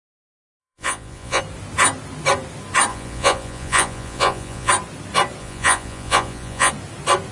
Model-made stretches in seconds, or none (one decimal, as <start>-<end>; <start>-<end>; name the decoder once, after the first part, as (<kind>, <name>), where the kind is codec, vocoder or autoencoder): 0.6-1.4 (vocoder, Vocos); 2.9-4.7; 5.4-6.7